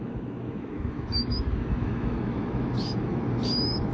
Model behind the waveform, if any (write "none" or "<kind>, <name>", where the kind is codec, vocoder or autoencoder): autoencoder, DAC-VAE